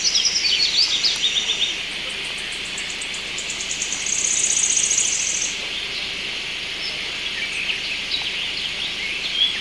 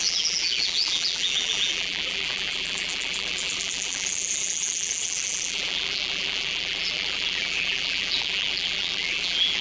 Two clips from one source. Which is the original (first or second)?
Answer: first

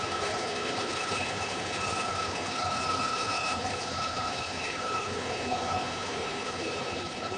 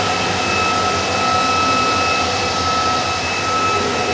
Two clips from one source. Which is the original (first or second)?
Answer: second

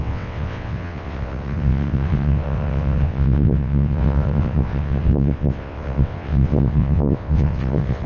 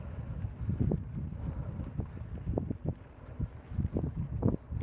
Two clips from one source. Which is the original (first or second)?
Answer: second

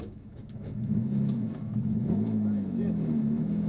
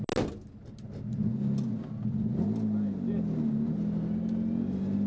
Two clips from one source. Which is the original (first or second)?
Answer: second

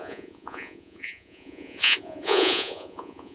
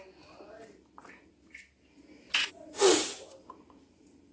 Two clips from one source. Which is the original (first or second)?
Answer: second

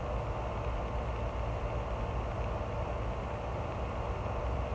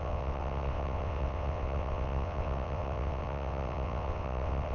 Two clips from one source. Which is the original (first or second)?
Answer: first